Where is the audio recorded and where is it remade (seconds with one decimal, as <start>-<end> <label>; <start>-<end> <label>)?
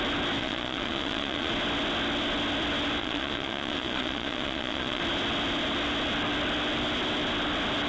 0.0-0.4 recorded; 0.4-1.5 remade; 1.5-3.0 recorded; 3.0-5.0 remade; 5.0-7.9 recorded